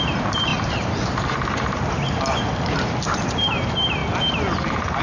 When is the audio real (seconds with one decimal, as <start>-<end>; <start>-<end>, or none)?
0.0-5.0